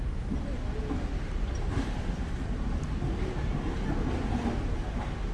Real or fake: real